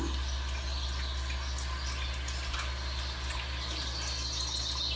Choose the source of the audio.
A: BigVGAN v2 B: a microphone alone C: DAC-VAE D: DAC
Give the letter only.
B